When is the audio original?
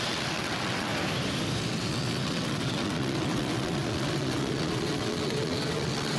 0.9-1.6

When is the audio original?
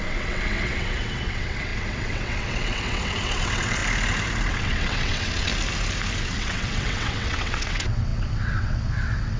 3.8-4.5; 5.5-6.2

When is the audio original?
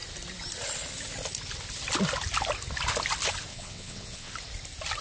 0.0-3.5; 4.3-5.0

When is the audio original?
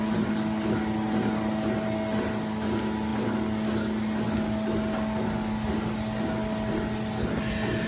0.0-7.9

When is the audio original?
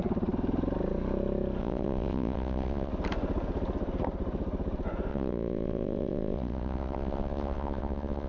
0.0-1.6; 2.9-5.1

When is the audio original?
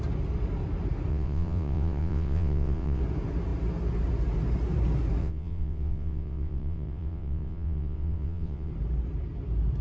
0.0-1.1; 3.0-5.2; 8.7-9.8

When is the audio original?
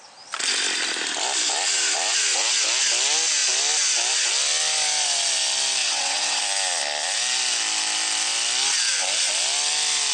0.0-5.8; 6.4-10.1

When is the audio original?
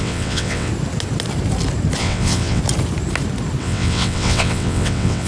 0.7-2.0; 2.6-3.6